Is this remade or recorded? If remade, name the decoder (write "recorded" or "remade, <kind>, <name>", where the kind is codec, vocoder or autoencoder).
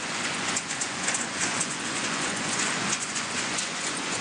remade, vocoder, Vocos